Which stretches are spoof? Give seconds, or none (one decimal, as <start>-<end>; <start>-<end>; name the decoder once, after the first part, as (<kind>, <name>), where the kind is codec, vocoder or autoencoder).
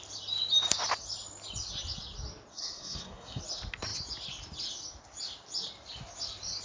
2.5-3.4 (codec, SNAC)